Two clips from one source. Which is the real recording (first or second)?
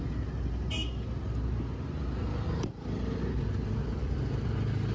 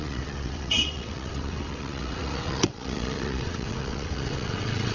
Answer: first